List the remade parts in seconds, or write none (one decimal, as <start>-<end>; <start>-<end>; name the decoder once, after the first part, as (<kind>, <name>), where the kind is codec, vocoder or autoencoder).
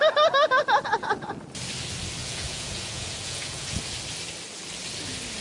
2.2-3.8 (vocoder, Vocos)